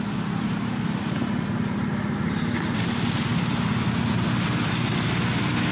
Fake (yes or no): no